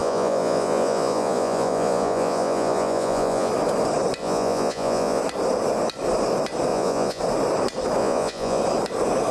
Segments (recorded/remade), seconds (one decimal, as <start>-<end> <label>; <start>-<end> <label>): 0.0-3.5 remade; 3.5-4.2 recorded; 4.2-5.2 remade; 5.2-6.7 recorded; 6.7-7.2 remade; 7.2-8.0 recorded; 8.0-8.6 remade; 8.6-9.3 recorded